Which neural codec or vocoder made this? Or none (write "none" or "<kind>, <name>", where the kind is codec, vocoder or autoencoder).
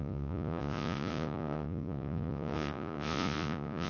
vocoder, Vocos